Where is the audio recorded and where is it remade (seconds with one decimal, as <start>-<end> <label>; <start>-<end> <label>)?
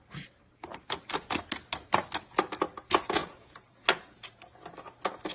0.0-3.2 recorded; 3.2-4.4 remade; 4.4-5.3 recorded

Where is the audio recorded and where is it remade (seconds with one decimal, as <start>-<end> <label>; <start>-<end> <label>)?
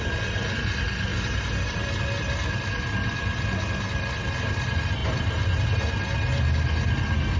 0.0-1.1 recorded; 1.1-1.9 remade; 1.9-5.0 recorded; 5.0-5.6 remade; 5.6-7.4 recorded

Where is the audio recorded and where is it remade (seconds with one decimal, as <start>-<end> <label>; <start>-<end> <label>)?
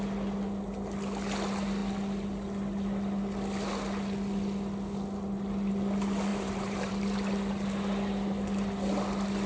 0.0-6.3 recorded; 6.3-6.9 remade; 6.9-9.5 recorded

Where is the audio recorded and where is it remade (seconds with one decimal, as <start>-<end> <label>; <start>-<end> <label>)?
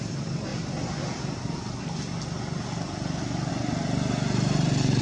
0.0-5.0 recorded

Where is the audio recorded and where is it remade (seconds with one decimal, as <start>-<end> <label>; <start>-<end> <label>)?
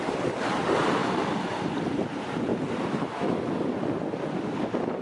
0.0-1.0 recorded; 1.0-2.0 remade; 2.0-5.0 recorded